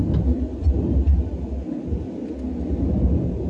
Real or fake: real